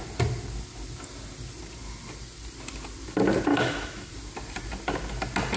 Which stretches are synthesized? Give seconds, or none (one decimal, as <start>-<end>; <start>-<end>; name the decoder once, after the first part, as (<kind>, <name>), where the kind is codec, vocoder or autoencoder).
3.5-4.1 (autoencoder, DAC-VAE)